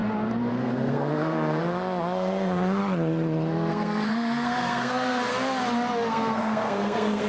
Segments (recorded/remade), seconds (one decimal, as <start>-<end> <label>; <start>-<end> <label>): 0.0-0.5 recorded; 0.5-2.8 remade; 2.8-3.7 recorded; 3.7-5.3 remade; 5.3-6.1 recorded; 6.1-7.3 remade